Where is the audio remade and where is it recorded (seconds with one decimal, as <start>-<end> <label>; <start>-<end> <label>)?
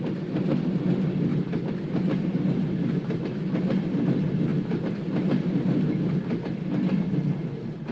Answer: 0.0-7.9 recorded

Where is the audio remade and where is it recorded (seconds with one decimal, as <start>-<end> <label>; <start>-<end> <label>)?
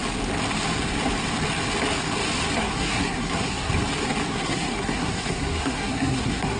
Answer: 0.0-2.6 recorded; 2.6-3.7 remade; 3.7-4.3 recorded; 4.3-6.6 remade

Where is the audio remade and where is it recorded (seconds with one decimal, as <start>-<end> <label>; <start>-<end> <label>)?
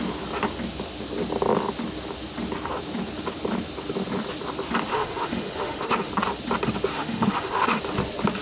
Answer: 0.0-4.9 recorded; 4.9-6.1 remade; 6.1-6.9 recorded; 6.9-7.8 remade; 7.8-8.4 recorded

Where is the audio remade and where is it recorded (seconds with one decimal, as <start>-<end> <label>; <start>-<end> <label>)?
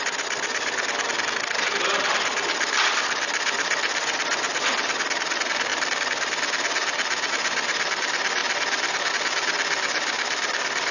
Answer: 0.0-10.9 recorded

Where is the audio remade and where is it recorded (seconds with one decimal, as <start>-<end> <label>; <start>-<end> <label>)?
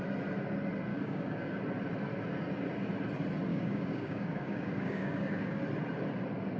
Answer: 0.0-0.9 recorded; 0.9-1.6 remade; 1.6-3.5 recorded; 3.5-5.6 remade; 5.6-6.6 recorded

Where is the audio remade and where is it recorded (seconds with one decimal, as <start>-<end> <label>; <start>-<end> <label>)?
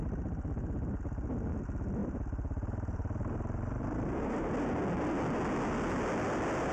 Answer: 0.0-2.0 recorded; 2.0-4.5 remade; 4.5-6.7 recorded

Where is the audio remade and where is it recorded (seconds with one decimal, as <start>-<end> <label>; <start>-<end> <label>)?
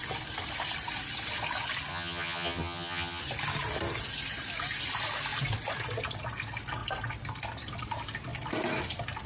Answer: 0.0-1.9 recorded; 1.9-3.2 remade; 3.2-9.3 recorded